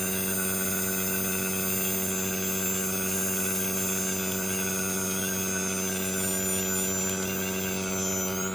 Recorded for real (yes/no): yes